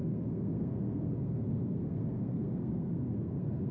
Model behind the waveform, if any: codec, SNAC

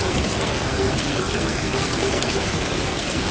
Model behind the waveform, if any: codec, SNAC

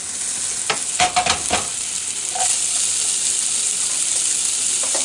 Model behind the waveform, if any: none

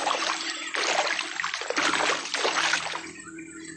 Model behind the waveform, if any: none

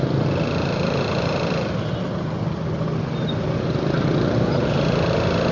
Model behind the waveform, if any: none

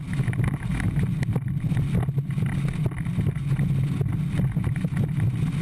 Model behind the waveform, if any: none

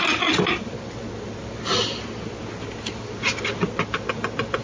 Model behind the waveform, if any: none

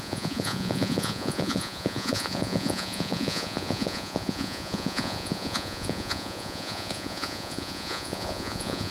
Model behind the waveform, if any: vocoder, Vocos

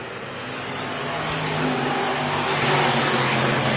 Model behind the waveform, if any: none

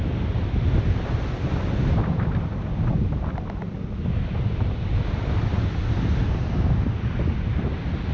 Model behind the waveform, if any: none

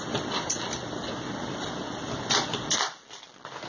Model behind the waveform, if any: none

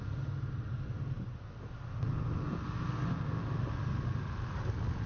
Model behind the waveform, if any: none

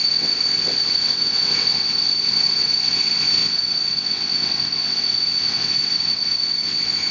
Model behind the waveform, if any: vocoder, WaveNeXt